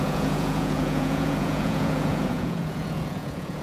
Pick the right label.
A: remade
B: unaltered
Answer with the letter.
A